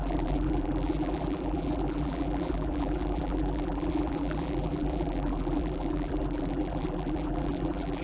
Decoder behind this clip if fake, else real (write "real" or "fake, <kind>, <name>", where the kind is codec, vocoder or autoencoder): fake, vocoder, BigVGAN v2